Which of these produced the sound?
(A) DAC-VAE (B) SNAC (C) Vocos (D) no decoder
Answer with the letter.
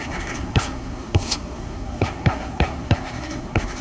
B